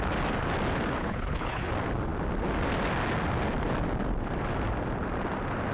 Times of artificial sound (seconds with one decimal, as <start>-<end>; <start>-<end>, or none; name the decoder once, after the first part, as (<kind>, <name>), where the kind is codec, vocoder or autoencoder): 1.0-1.7 (codec, HILCodec)